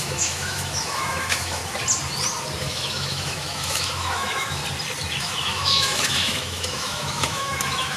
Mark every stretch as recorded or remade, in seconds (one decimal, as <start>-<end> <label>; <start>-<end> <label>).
0.0-1.6 remade; 1.6-2.6 recorded; 2.6-4.6 remade; 4.6-5.2 recorded; 5.2-8.0 remade